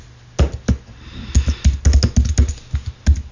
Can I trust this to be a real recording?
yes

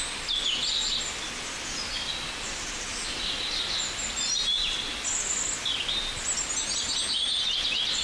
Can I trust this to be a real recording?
yes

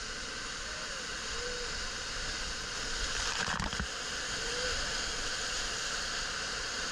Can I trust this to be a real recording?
yes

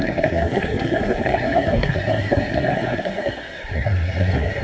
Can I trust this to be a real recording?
no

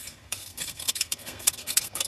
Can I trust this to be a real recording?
no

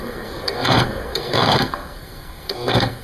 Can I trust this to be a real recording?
no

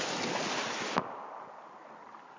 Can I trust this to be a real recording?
yes